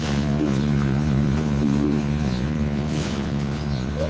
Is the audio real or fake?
fake